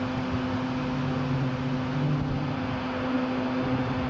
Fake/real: real